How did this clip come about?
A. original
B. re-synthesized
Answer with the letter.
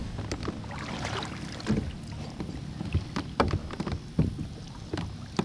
A